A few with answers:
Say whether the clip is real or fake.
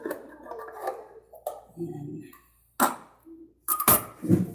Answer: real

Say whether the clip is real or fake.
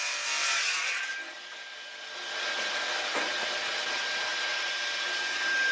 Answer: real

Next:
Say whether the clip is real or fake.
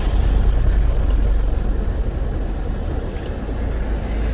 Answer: real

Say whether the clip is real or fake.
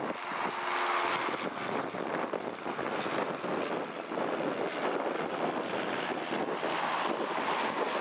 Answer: real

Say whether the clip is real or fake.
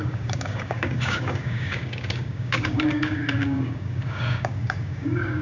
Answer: fake